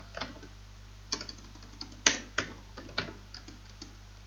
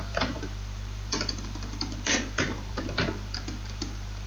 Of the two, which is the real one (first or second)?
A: first